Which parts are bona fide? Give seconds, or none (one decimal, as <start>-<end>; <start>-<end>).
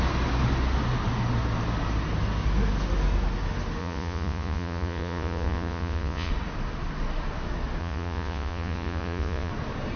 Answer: 0.0-3.8; 6.3-7.8; 9.5-10.0